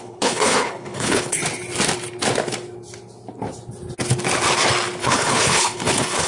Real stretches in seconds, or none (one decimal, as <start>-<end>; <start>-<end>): 1.4-5.0